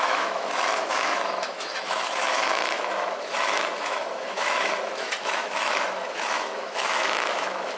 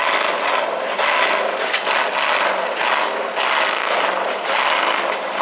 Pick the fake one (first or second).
first